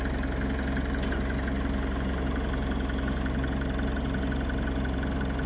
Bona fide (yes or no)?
yes